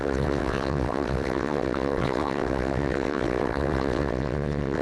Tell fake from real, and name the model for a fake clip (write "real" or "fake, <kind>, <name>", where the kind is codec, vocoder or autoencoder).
fake, vocoder, WaveNeXt